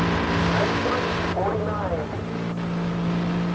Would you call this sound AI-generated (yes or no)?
no